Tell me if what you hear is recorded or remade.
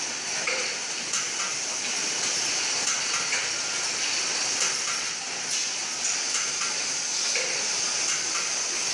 recorded